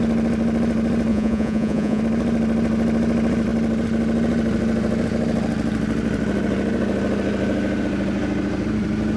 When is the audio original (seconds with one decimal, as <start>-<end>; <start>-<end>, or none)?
0.0-1.1; 2.0-9.2